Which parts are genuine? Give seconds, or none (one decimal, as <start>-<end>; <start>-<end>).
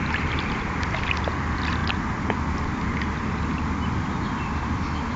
0.0-5.2